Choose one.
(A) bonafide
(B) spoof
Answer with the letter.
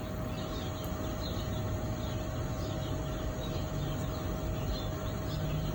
A